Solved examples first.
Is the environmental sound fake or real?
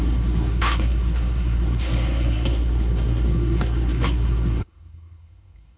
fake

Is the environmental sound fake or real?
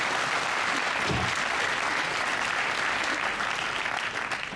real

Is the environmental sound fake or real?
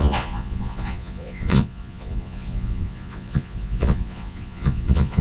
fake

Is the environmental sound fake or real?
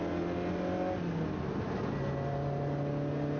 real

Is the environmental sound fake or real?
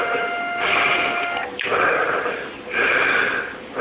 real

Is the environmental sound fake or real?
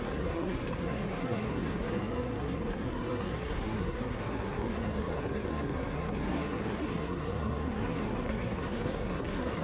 fake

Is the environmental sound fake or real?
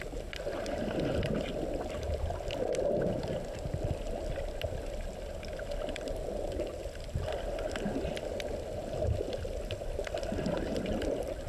real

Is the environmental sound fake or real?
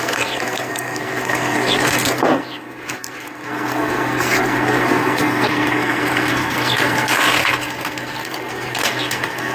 fake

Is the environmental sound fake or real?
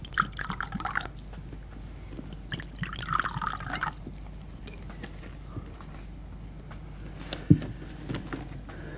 real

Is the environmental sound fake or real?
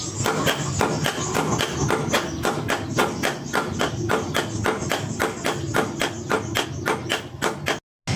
real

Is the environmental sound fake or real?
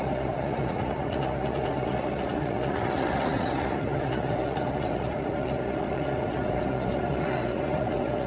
fake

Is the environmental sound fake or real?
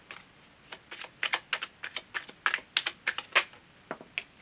real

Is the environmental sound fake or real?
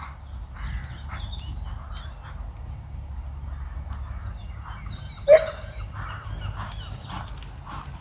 real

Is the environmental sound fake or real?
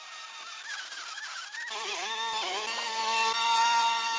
fake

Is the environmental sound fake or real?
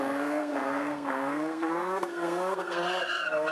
fake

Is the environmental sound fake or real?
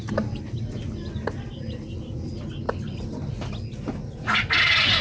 real